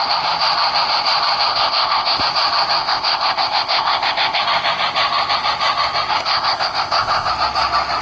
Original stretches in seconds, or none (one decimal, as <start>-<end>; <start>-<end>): 0.0-1.5; 2.2-2.8; 4.4-6.1; 7.3-8.0